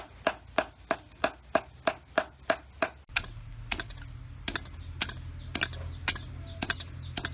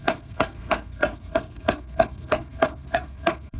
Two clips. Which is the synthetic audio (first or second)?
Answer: second